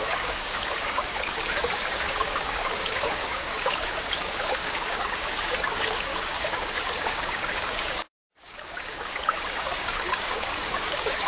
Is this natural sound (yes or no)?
no